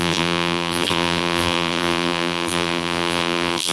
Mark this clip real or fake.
fake